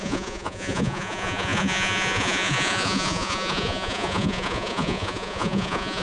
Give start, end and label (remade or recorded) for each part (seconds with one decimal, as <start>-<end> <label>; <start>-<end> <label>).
0.0-6.0 remade